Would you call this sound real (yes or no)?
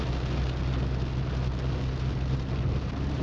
yes